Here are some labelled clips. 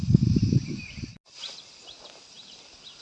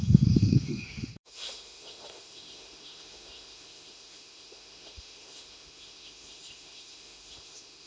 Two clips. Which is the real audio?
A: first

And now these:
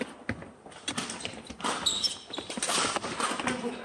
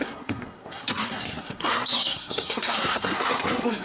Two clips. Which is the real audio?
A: first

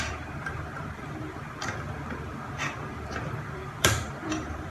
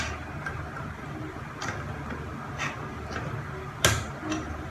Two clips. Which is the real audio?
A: second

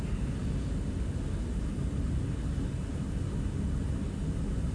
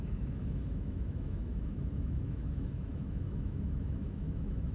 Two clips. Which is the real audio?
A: first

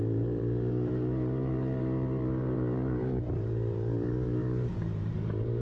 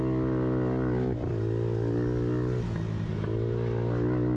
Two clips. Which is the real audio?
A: second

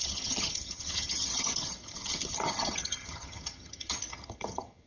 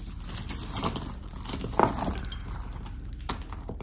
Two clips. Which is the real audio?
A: second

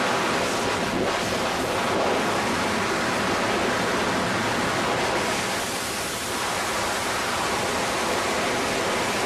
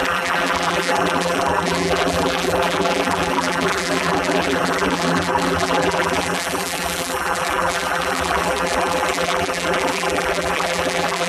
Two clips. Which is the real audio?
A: first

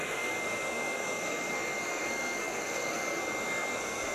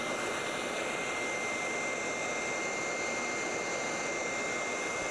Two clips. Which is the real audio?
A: second